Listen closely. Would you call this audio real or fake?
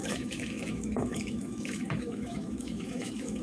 fake